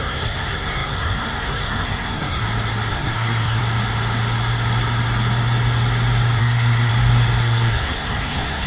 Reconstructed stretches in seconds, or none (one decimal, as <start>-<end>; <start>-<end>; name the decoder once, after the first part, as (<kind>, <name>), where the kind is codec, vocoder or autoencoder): 0.0-2.4 (codec, SNAC); 2.9-3.6; 6.4-6.9; 7.4-8.7